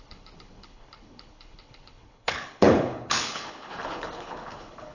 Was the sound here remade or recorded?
remade